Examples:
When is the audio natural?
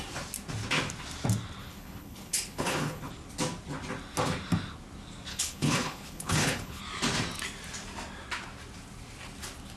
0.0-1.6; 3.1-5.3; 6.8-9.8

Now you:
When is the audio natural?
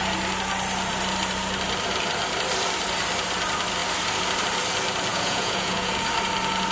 0.0-5.1; 5.9-6.7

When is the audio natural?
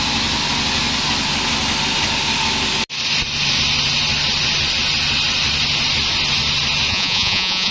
0.0-6.9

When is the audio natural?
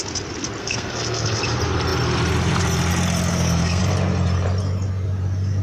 0.0-0.6; 1.4-3.3; 3.8-5.6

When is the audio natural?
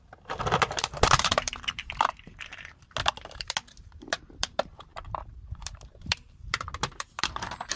2.5-3.4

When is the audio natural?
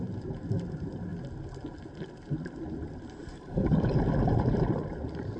0.0-3.3; 3.9-5.4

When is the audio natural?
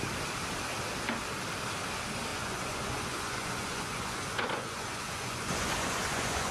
0.0-2.3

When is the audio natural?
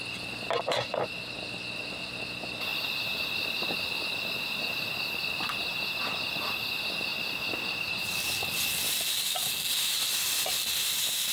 0.0-11.3